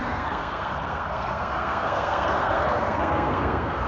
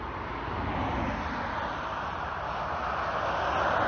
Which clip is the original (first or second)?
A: second